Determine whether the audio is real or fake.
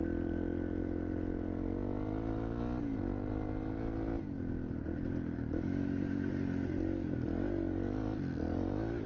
real